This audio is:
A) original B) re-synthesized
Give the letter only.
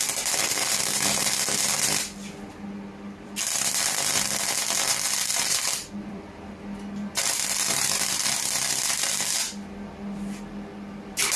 B